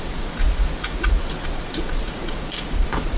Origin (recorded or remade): remade